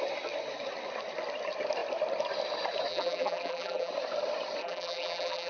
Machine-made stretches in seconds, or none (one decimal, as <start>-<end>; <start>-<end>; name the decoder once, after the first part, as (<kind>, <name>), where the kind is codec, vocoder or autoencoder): 2.9-3.9 (vocoder, BigVGAN v2); 4.6-5.5

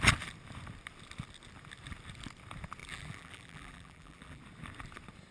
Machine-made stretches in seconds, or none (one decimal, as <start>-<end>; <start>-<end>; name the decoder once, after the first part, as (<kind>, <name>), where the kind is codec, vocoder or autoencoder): 2.8-4.4 (vocoder, BigVGAN v2)

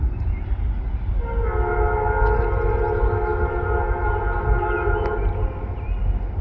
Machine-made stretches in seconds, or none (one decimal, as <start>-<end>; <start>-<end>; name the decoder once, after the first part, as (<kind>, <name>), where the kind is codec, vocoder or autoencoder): none

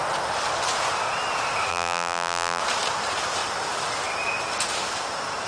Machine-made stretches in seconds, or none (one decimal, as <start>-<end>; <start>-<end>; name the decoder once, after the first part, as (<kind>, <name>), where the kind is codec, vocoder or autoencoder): 1.7-2.6 (vocoder, BigVGAN v2)

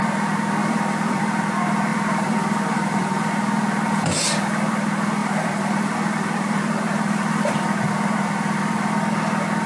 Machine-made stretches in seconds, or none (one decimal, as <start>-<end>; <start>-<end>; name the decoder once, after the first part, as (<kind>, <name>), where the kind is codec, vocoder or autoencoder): 0.6-1.2 (vocoder, BigVGAN v2); 1.9-3.3; 5.2-8.9

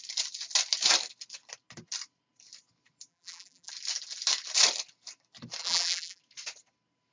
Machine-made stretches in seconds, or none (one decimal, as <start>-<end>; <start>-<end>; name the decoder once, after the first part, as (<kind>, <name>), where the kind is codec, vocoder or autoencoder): 3.1-3.7 (vocoder, BigVGAN v2); 5.6-6.2

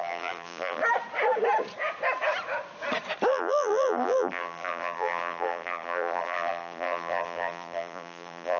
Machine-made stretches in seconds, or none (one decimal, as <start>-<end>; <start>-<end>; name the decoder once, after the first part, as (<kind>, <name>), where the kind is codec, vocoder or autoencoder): 0.0-0.8 (vocoder, BigVGAN v2); 3.3-8.6